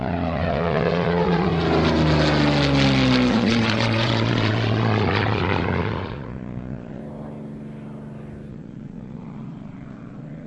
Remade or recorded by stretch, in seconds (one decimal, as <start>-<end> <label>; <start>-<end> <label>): 0.0-1.5 remade; 1.5-3.3 recorded; 3.3-7.0 remade; 7.0-8.5 recorded; 8.5-10.5 remade